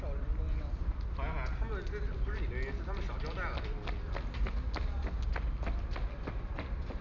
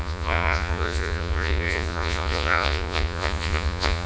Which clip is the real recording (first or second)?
first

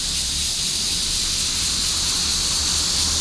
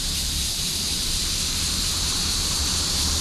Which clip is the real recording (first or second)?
first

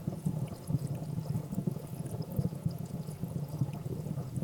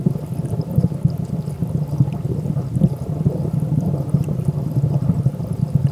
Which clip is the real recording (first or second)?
second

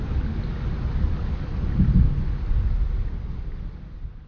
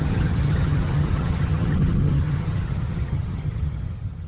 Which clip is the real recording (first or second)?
first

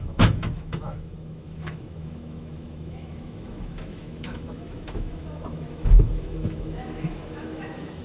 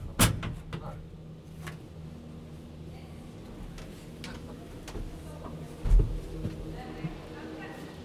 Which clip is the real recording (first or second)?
second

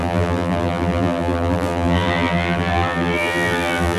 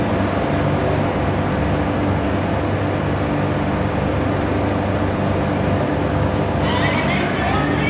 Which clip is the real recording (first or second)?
second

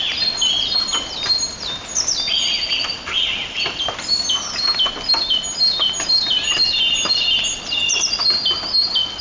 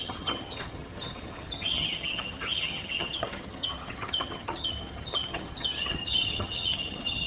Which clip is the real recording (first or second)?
first